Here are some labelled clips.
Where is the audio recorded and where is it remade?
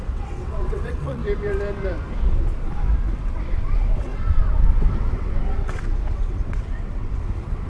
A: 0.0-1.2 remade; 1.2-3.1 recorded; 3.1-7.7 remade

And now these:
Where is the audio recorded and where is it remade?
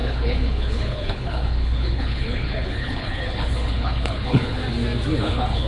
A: 0.0-4.6 remade; 4.6-5.2 recorded; 5.2-5.7 remade